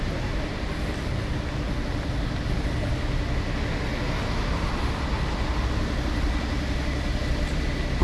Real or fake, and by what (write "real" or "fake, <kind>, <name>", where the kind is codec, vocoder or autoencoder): real